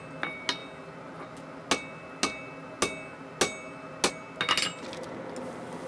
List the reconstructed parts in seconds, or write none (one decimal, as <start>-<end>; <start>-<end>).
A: none